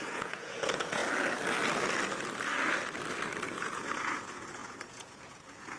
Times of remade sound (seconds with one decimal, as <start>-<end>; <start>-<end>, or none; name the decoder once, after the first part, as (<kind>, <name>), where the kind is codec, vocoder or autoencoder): 0.0-1.0 (vocoder, Vocos); 3.5-5.8